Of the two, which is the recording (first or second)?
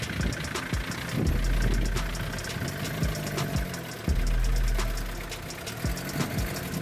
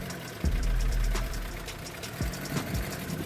first